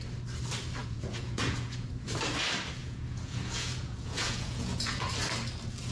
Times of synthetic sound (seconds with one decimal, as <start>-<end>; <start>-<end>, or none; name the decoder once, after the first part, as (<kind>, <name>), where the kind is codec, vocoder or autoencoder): 0.8-1.9 (vocoder, Vocos); 2.8-5.1